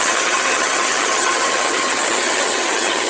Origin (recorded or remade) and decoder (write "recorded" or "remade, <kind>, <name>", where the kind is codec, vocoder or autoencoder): remade, vocoder, HiFi-GAN